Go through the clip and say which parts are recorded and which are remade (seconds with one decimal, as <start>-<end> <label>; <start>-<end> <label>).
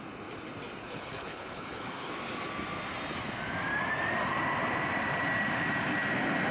0.0-0.8 recorded; 0.8-2.1 remade; 2.1-6.5 recorded